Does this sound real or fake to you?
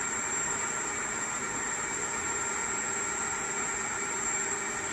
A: fake